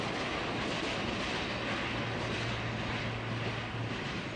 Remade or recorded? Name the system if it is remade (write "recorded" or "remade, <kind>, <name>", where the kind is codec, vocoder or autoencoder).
recorded